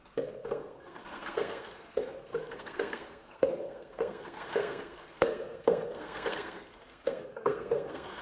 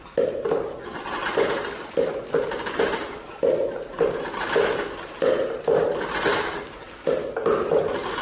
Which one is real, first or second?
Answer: second